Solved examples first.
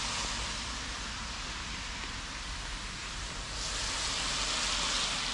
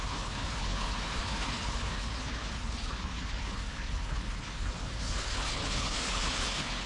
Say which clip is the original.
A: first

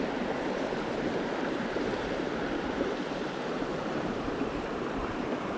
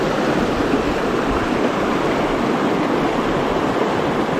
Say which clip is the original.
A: second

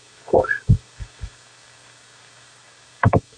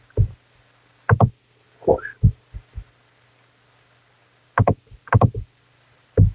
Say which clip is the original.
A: second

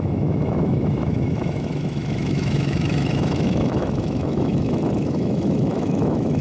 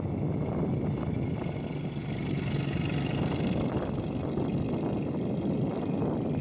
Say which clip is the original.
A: second